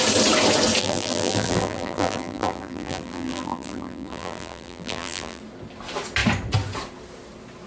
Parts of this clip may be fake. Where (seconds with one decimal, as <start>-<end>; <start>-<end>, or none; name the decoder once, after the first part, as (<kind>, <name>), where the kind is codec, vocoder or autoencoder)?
0.8-5.4 (vocoder, BigVGAN v2)